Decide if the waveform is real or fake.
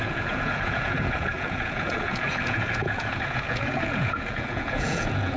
fake